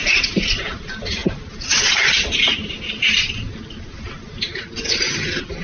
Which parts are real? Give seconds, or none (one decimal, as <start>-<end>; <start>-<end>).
0.0-5.6

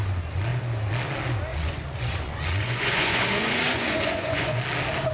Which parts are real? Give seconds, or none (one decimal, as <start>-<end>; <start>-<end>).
0.0-1.5; 4.6-5.1

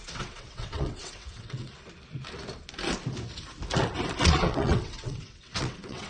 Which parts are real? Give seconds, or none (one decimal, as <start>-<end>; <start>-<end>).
1.7-4.2

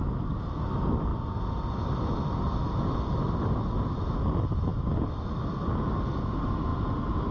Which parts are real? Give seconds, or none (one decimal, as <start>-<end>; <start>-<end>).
0.0-7.3